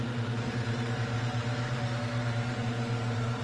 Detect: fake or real fake